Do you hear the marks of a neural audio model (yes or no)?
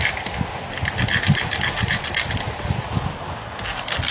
no